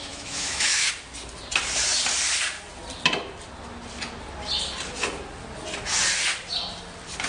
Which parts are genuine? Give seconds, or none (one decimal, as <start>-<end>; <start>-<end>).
0.9-7.3